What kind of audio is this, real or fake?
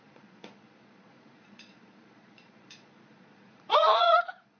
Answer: fake